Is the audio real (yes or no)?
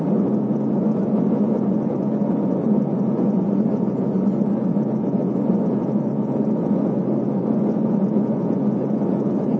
no